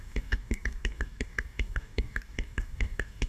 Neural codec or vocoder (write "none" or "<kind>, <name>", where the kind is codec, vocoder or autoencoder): codec, DAC